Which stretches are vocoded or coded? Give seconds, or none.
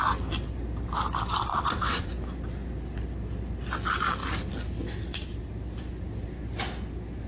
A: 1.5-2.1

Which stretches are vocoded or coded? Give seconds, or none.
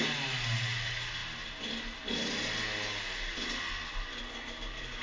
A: none